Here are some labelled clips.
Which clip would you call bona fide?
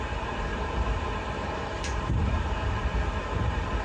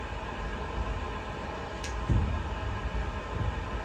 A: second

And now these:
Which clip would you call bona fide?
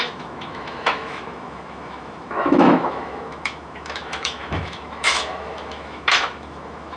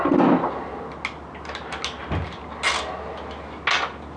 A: second